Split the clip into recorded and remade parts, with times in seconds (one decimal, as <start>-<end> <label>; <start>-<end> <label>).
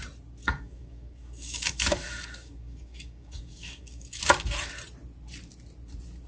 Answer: 0.0-0.4 recorded; 0.4-4.2 remade; 4.2-6.3 recorded